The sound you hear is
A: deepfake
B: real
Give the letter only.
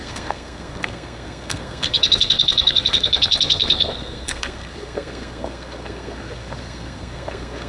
A